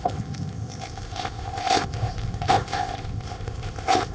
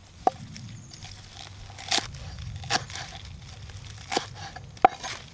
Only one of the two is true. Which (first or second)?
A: second